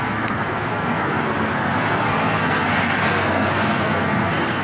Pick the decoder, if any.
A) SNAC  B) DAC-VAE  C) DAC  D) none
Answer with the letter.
A